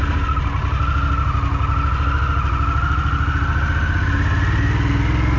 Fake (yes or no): no